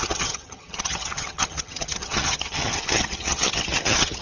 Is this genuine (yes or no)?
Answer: no